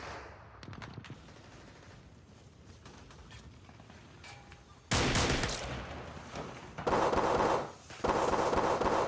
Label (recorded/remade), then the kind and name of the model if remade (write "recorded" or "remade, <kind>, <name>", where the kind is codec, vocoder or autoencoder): recorded